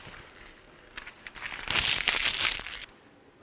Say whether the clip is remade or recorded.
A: recorded